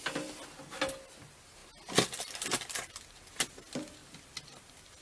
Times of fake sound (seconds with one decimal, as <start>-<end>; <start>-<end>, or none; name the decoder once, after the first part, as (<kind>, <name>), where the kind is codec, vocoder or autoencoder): none